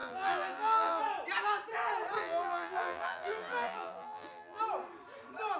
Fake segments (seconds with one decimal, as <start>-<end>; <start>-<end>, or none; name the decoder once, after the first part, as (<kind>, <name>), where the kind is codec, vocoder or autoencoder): 0.0-1.0 (vocoder, BigVGAN v2); 2.2-4.6